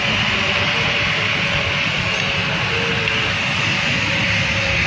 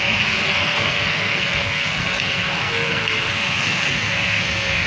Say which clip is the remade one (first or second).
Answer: second